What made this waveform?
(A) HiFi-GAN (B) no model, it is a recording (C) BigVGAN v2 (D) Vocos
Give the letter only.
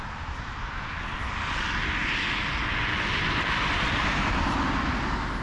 B